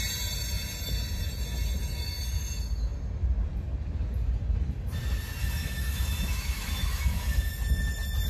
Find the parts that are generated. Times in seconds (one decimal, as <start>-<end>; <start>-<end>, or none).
5.4-7.5